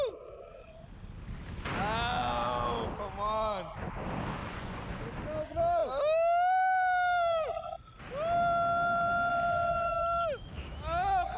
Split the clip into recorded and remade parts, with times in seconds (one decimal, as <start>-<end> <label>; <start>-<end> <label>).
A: 0.0-4.4 recorded; 4.4-5.0 remade; 5.0-11.4 recorded